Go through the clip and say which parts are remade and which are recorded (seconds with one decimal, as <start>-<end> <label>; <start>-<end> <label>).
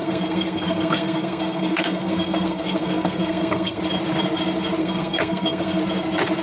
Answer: 0.0-3.8 remade; 3.8-4.8 recorded; 4.8-5.8 remade; 5.8-6.4 recorded